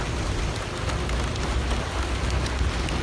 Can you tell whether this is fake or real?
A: real